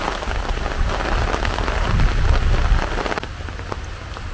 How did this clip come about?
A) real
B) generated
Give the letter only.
A